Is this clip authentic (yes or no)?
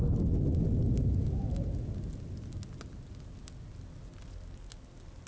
yes